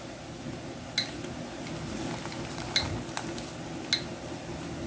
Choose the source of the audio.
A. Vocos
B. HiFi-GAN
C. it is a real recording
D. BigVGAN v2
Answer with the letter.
C